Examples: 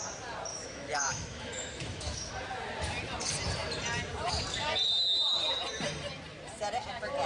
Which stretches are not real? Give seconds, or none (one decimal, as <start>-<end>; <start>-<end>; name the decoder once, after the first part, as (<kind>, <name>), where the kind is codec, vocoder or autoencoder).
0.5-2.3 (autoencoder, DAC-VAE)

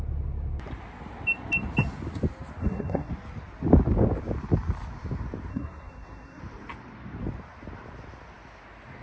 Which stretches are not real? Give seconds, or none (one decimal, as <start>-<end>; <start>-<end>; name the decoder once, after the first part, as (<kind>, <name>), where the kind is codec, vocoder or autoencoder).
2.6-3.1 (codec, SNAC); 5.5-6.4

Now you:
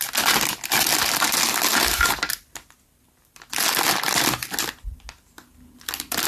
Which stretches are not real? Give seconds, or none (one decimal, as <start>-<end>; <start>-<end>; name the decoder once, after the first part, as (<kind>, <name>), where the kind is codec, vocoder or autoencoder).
none